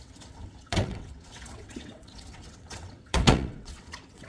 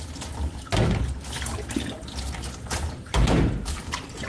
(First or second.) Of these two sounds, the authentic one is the second